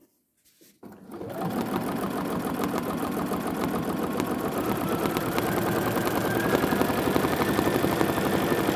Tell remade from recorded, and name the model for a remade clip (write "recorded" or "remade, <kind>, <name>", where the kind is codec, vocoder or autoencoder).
recorded